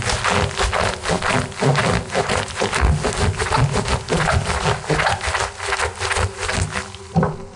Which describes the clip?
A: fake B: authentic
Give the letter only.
B